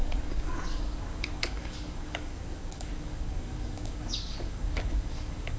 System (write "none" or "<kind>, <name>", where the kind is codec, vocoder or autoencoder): codec, DAC